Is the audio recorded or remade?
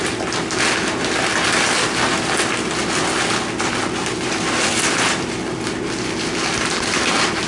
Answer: recorded